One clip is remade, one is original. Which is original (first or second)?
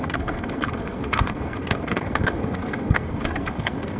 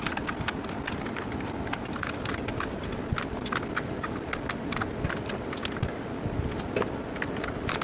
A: second